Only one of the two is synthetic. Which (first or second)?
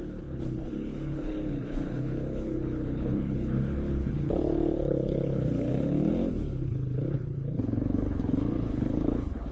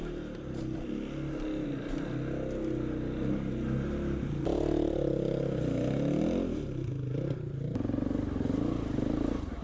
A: first